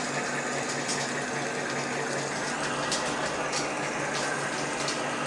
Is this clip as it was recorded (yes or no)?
yes